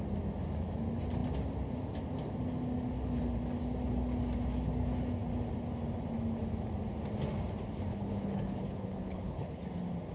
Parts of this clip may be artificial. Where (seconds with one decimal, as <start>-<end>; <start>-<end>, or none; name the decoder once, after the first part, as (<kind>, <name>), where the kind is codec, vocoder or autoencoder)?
7.9-9.7 (codec, HILCodec)